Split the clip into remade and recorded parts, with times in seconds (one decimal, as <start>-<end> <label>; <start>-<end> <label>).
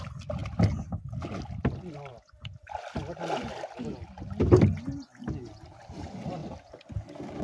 0.0-7.4 recorded